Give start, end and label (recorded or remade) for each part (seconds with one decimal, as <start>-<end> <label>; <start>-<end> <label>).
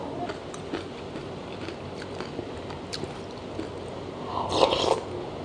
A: 0.0-5.4 recorded